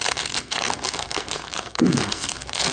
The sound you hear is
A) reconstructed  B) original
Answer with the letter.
A